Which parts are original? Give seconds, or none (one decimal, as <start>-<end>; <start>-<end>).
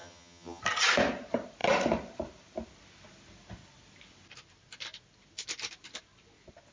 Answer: 0.6-6.7